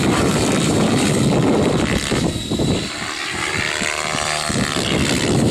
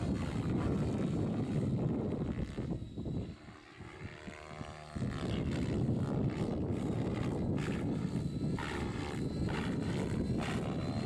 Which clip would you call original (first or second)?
second